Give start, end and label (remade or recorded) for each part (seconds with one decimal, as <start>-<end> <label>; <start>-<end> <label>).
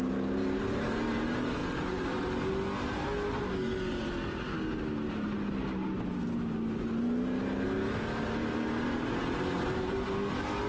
0.0-10.7 recorded